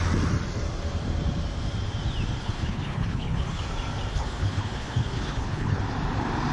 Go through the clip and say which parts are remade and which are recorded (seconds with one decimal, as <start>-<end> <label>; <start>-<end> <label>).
0.0-2.4 recorded; 2.4-3.6 remade; 3.6-4.1 recorded; 4.1-5.8 remade; 5.8-6.5 recorded